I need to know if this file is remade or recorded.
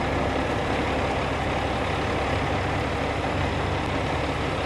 recorded